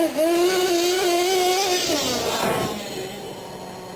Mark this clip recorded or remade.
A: recorded